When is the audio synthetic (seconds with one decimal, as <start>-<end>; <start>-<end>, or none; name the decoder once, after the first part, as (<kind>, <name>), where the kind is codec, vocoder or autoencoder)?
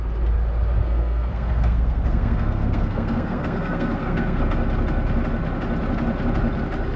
0.8-4.4 (codec, SNAC)